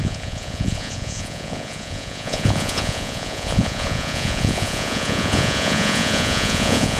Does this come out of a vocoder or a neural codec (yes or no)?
yes